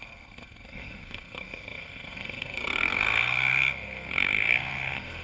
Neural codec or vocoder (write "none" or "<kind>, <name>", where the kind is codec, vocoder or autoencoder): codec, SNAC